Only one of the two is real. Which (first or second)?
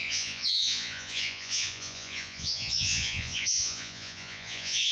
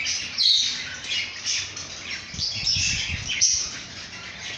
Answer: second